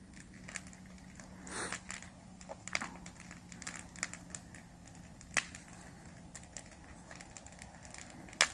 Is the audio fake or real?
real